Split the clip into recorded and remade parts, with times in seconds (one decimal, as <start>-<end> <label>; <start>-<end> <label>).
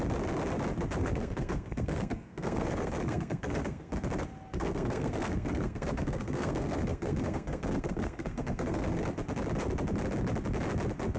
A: 0.0-1.0 recorded; 1.0-3.9 remade; 3.9-4.5 recorded; 4.5-9.0 remade; 9.0-11.2 recorded